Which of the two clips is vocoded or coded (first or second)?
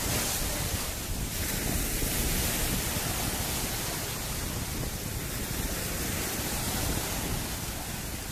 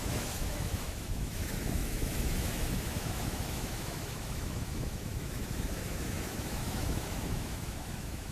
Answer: second